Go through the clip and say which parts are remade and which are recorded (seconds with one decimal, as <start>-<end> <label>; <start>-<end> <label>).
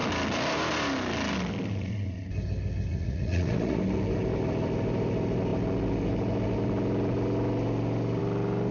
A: 0.0-2.9 recorded; 2.9-3.8 remade; 3.8-8.7 recorded